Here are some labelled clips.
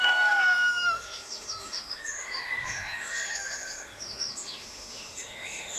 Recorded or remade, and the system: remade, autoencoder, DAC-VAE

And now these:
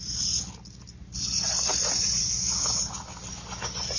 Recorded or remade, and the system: recorded